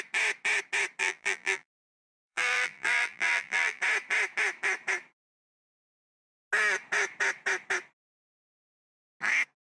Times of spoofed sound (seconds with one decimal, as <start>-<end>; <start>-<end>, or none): 1.0-3.8